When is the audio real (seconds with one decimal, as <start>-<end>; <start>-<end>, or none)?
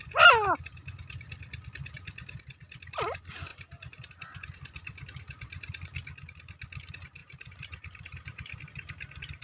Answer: 0.0-3.5; 4.1-7.2; 8.6-9.4